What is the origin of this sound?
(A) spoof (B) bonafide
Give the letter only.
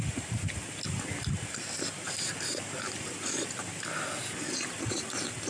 A